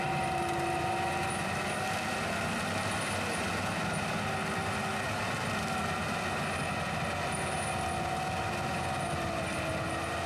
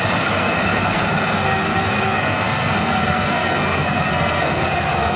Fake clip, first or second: second